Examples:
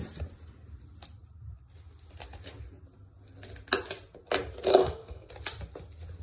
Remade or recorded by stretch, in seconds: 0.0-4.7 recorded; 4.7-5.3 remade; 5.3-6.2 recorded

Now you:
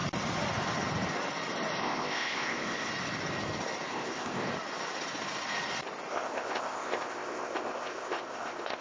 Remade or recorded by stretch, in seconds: 0.0-1.8 recorded; 1.8-2.9 remade; 2.9-3.9 recorded; 3.9-4.4 remade; 4.4-6.1 recorded; 6.1-8.8 remade

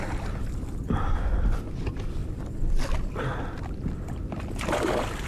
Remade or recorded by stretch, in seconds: 0.0-5.3 recorded